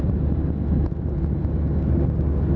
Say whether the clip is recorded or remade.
recorded